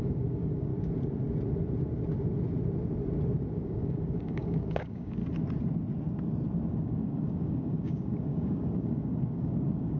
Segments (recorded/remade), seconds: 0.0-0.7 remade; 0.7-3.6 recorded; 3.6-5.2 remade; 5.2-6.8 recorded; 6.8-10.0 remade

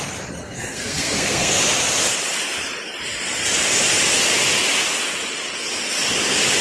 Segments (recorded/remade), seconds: 0.0-0.4 recorded; 0.4-1.6 remade; 1.6-6.6 recorded

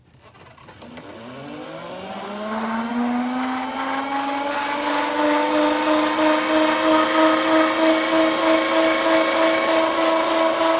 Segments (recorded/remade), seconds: 0.0-10.8 recorded

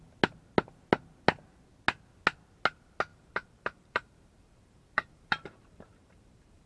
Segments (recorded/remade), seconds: 0.0-3.1 recorded; 3.1-6.7 remade

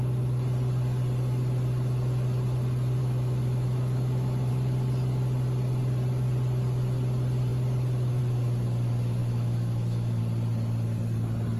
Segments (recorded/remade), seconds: 0.0-3.0 recorded; 3.0-4.5 remade; 4.5-9.2 recorded; 9.2-10.2 remade; 10.2-11.6 recorded

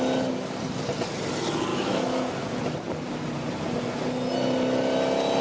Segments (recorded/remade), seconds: 0.0-1.7 recorded; 1.7-2.3 remade; 2.3-5.4 recorded

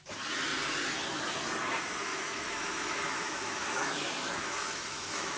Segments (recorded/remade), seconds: 0.0-2.1 recorded; 2.1-5.4 remade